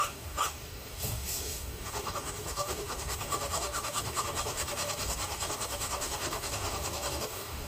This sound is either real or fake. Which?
fake